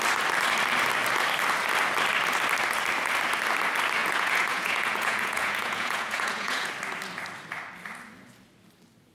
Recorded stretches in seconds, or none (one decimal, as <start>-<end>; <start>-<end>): 0.0-4.0; 6.7-9.1